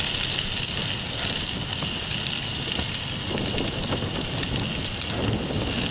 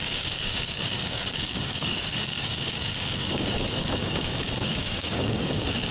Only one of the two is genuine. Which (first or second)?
first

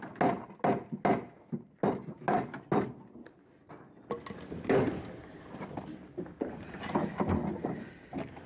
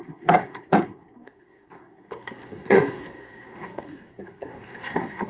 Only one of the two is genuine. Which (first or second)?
first